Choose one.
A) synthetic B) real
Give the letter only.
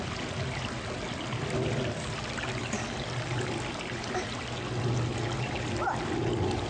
B